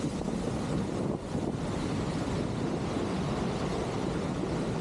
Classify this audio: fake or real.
real